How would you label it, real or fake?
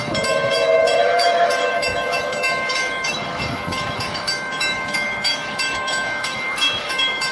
fake